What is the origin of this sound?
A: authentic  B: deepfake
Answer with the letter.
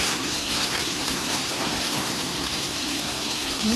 B